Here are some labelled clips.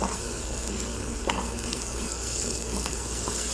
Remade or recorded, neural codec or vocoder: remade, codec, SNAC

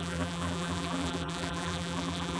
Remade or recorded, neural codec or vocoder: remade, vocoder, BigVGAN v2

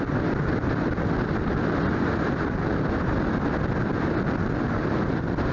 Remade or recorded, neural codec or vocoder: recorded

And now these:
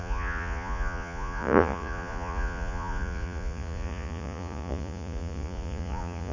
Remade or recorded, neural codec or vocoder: remade, vocoder, Vocos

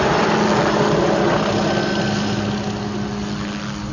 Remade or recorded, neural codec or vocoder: recorded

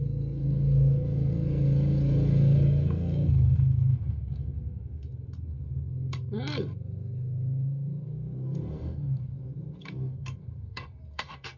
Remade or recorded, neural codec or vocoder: remade, codec, SNAC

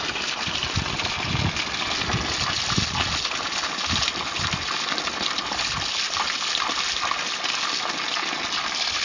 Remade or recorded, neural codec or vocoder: recorded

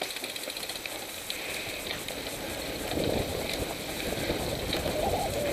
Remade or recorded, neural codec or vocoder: recorded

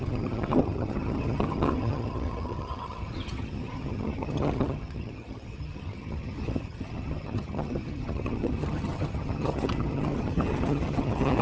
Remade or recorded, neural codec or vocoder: remade, vocoder, HiFi-GAN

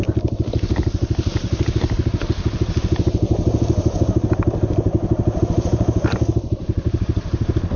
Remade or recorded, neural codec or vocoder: recorded